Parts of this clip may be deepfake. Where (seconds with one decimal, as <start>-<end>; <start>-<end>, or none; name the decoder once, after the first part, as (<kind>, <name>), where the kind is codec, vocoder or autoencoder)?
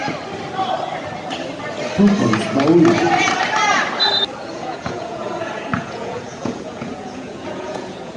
4.4-8.2 (vocoder, Vocos)